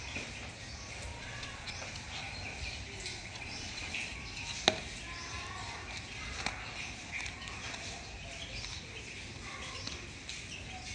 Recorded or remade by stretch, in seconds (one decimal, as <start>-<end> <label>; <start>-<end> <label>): 0.0-1.1 recorded; 1.1-1.8 remade; 1.8-3.1 recorded; 3.1-3.9 remade; 3.9-10.9 recorded